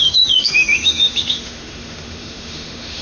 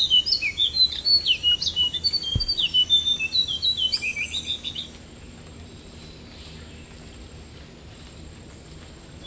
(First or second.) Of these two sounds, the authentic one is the second